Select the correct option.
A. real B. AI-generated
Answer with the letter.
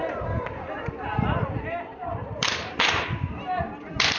B